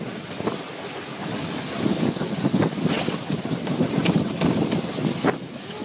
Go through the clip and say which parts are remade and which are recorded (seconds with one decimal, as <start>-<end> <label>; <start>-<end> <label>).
0.0-5.8 recorded